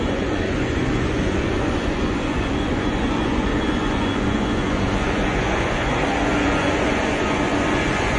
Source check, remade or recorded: remade